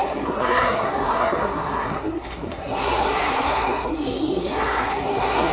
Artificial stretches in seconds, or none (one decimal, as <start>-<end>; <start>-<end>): 0.0-5.5